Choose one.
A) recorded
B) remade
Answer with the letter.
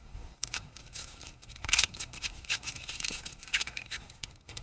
B